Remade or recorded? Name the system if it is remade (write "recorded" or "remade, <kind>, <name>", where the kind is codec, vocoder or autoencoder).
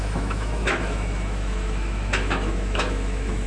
remade, autoencoder, DAC-VAE